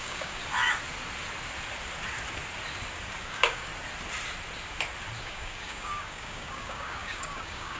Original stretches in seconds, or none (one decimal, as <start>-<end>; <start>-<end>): 0.4-3.2; 3.7-5.2